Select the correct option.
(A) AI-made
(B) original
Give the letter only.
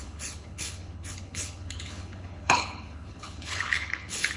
A